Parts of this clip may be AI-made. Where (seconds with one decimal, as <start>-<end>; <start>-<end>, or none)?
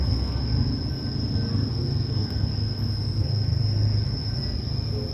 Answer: 0.0-0.4; 1.7-2.5; 3.2-3.6